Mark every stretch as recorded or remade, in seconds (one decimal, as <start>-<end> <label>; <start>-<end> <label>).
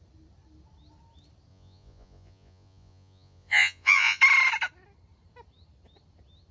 0.0-1.5 recorded; 1.5-4.2 remade; 4.2-6.5 recorded